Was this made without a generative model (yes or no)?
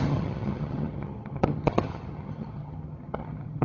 no